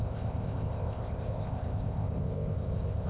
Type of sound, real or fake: fake